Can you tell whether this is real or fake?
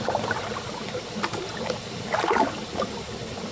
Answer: real